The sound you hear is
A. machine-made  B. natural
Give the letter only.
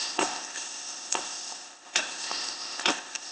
A